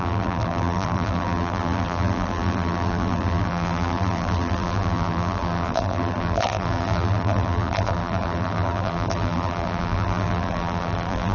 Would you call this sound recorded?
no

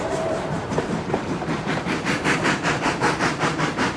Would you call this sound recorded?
no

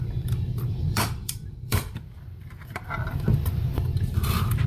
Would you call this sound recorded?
no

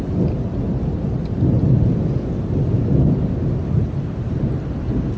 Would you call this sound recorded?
yes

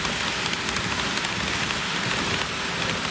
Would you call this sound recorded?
yes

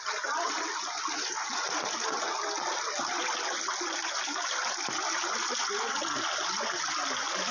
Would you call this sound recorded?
yes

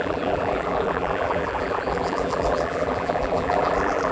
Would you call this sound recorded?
no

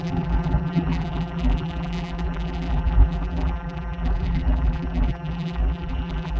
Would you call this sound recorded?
no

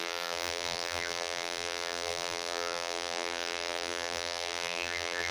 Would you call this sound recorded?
no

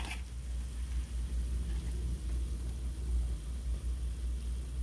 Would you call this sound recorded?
yes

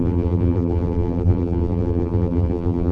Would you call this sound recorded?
no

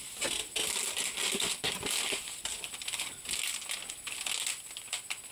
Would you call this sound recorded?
yes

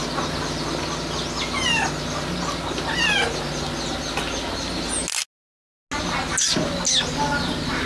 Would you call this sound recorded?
yes